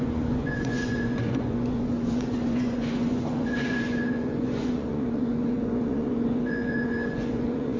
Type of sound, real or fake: fake